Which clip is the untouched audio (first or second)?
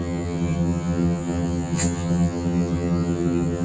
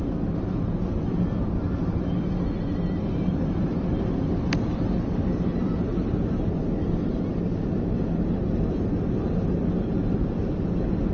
second